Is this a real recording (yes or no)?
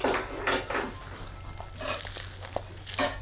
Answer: yes